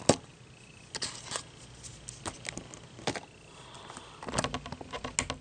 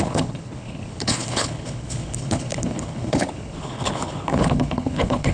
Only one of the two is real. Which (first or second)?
first